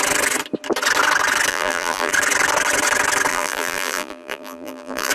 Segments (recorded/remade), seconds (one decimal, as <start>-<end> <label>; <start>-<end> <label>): 0.0-1.5 recorded; 1.5-2.1 remade; 2.1-3.3 recorded; 3.3-5.1 remade

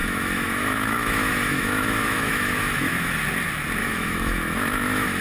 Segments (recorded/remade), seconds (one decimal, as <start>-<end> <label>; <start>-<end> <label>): 0.0-3.1 remade; 3.1-3.8 recorded; 3.8-5.2 remade

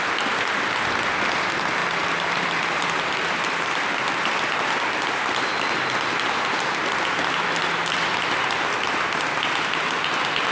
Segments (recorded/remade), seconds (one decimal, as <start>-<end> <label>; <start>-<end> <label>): 0.0-10.5 recorded

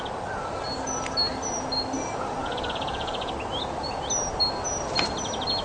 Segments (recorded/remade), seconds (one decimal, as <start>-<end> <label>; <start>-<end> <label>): 0.0-2.4 recorded; 2.4-3.3 remade; 3.3-5.6 recorded

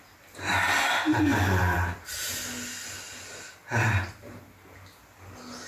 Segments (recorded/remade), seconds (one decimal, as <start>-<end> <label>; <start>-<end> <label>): 0.0-1.3 recorded; 1.3-2.3 remade; 2.3-3.6 recorded; 3.6-4.4 remade; 4.4-5.7 recorded

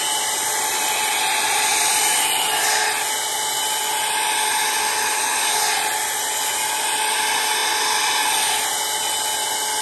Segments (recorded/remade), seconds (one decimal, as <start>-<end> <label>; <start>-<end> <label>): 0.0-9.8 recorded

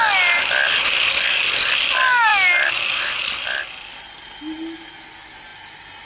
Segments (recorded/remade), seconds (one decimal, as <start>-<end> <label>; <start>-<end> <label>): 0.0-6.1 recorded

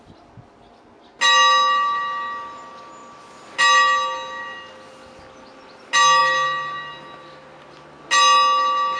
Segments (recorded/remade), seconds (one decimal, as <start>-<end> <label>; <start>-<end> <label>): 0.0-9.0 recorded